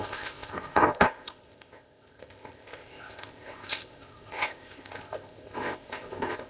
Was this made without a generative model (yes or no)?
no